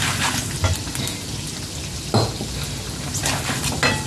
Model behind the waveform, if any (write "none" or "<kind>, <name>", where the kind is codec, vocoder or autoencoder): none